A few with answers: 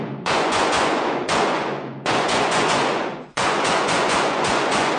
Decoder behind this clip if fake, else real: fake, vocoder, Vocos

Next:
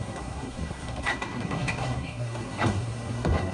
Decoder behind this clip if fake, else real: fake, codec, SNAC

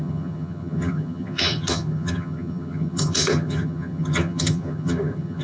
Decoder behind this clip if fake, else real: fake, vocoder, HiFi-GAN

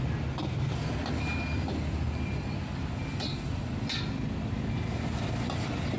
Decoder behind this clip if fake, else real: real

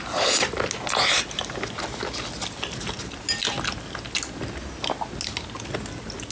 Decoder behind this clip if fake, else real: real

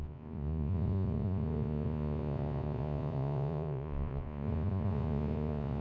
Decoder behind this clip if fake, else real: fake, vocoder, Vocos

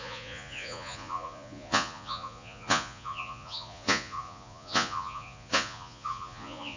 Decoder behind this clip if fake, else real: fake, vocoder, Vocos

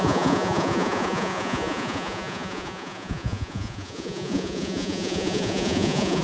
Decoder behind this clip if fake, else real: fake, vocoder, Vocos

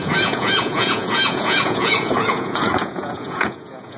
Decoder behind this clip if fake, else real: fake, vocoder, Vocos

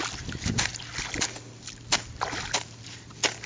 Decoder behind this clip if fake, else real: real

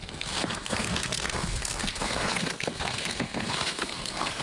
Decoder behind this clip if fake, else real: fake, codec, SNAC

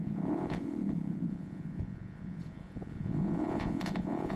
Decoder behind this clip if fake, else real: fake, vocoder, Vocos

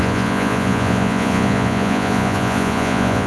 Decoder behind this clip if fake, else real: fake, vocoder, Vocos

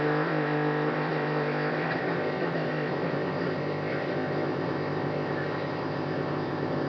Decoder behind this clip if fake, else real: fake, codec, ZipCodec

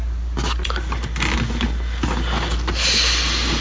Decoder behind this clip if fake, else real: real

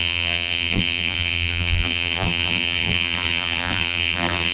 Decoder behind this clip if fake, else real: fake, vocoder, BigVGAN v2